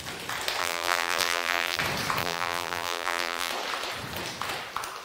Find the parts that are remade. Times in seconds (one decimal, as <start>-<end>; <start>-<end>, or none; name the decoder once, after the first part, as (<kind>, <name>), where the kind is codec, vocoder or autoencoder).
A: 0.6-1.8 (vocoder, BigVGAN v2); 2.2-3.5